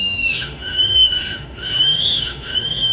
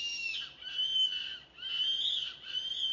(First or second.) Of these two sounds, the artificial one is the first